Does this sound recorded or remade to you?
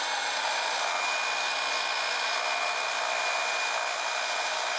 recorded